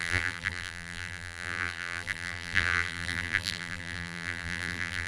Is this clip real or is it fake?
fake